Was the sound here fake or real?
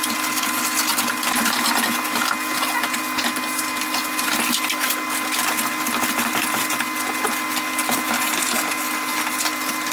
real